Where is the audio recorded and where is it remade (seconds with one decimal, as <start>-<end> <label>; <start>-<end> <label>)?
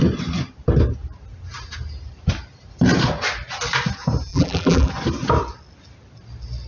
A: 0.0-4.3 recorded; 4.3-4.9 remade; 4.9-6.7 recorded